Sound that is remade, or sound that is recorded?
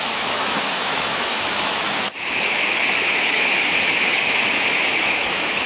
remade